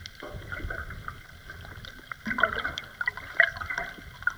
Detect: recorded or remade remade